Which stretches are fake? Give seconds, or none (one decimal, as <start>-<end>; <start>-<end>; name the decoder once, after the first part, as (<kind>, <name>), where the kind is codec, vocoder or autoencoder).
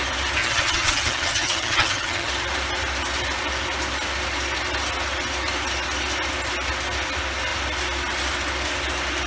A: 0.4-2.3 (vocoder, HiFi-GAN)